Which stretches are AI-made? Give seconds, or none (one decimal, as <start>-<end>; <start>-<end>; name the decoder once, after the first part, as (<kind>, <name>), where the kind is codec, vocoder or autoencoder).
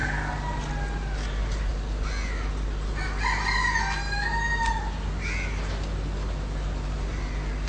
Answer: none